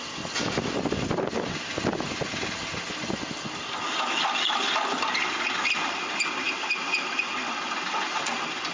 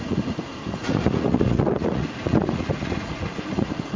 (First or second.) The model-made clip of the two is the second